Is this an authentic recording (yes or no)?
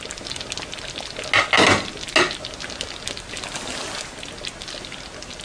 yes